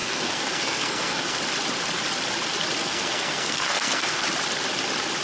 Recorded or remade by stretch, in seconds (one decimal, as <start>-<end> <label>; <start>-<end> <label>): 0.0-1.4 remade; 1.4-2.8 recorded; 2.8-4.2 remade; 4.2-5.2 recorded